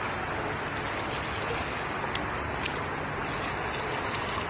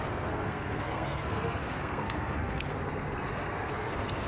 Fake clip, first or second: second